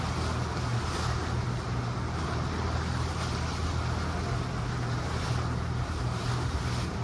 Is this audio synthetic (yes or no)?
no